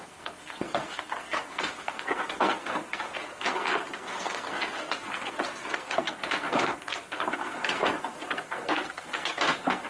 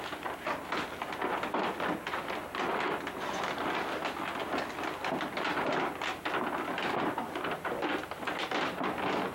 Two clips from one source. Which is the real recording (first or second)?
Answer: second